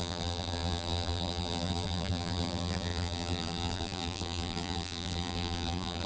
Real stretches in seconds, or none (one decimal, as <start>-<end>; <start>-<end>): none